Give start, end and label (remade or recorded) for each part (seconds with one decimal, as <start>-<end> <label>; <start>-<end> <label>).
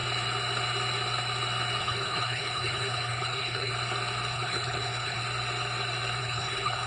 0.0-1.8 recorded; 1.8-3.7 remade; 3.7-4.3 recorded; 4.3-5.2 remade; 5.2-6.2 recorded; 6.2-6.9 remade